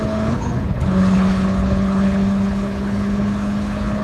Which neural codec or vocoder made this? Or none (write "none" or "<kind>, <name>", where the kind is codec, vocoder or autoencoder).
codec, HILCodec